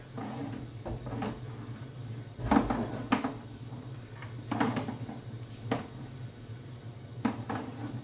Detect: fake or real real